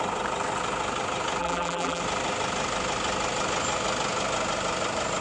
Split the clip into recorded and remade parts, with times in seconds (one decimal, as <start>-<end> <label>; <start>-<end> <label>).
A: 0.0-1.4 recorded; 1.4-2.0 remade; 2.0-5.2 recorded